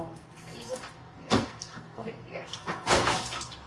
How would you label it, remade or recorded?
remade